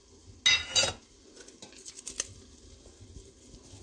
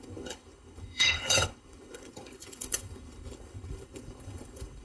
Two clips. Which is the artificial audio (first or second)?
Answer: second